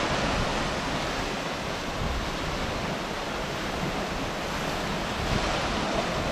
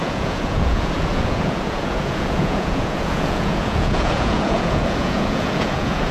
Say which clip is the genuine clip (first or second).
first